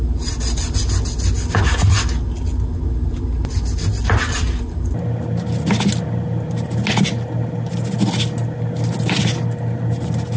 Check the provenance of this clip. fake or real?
real